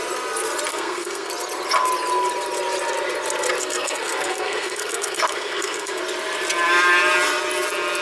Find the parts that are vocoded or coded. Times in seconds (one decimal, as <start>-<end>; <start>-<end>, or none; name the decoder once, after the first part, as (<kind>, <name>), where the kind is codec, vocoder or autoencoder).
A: 0.7-1.3 (codec, SNAC); 3.6-6.0